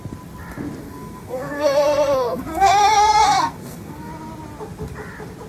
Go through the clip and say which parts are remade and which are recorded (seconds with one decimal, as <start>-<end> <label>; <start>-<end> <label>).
0.0-0.8 recorded; 0.8-4.1 remade; 4.1-5.5 recorded